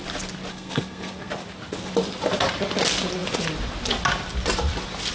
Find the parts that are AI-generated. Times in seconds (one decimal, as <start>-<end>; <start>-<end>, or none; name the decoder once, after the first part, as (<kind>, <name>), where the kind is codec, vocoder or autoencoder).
0.5-1.3 (codec, SNAC)